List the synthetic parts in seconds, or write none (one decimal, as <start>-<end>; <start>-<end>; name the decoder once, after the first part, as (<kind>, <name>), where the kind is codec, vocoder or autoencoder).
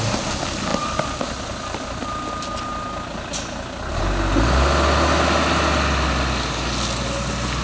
none